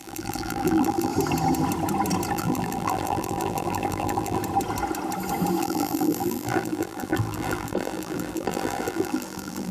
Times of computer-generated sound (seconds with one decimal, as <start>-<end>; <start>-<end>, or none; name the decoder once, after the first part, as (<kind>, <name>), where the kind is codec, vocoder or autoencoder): 0.0-1.1 (vocoder, BigVGAN v2); 2.3-4.4; 5.6-9.7

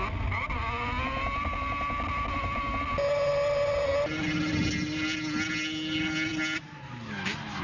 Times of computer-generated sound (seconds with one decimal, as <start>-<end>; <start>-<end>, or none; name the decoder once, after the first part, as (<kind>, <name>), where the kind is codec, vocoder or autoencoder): none

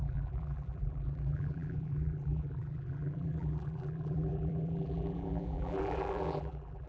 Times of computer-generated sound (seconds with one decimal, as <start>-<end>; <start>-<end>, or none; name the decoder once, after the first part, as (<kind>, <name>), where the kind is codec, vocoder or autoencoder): 0.0-6.9 (vocoder, BigVGAN v2)

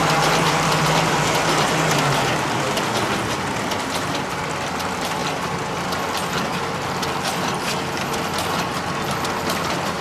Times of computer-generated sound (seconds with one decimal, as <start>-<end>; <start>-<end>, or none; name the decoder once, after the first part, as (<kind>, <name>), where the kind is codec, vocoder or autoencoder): none

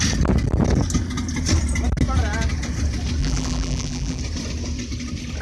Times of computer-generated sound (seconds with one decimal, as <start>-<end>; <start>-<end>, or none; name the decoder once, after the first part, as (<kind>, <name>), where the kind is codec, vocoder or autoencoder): 3.2-4.2 (vocoder, BigVGAN v2)

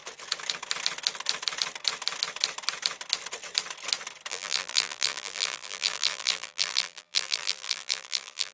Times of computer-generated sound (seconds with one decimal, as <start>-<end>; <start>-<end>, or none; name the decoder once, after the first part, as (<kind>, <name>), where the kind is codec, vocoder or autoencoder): 4.3-8.5 (vocoder, BigVGAN v2)

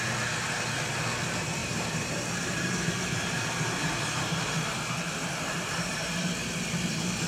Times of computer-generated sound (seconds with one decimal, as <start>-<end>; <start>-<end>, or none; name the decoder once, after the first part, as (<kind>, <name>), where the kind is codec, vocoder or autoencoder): 1.6-6.0 (vocoder, BigVGAN v2)